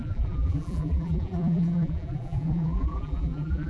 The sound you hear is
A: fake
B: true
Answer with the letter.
A